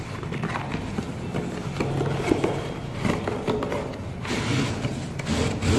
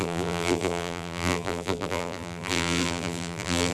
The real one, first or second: first